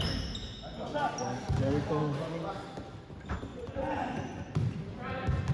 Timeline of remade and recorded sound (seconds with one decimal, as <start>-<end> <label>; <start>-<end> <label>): 0.0-2.0 recorded; 2.0-2.5 remade; 2.5-3.5 recorded; 3.5-4.6 remade; 4.6-5.5 recorded